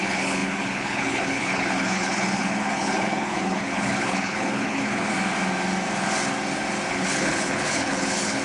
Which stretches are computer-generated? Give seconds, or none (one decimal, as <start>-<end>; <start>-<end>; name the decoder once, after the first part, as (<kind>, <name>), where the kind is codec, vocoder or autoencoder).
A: 0.0-5.1 (codec, HILCodec); 6.9-8.4